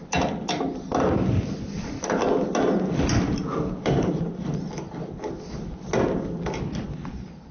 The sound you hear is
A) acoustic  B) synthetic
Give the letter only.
A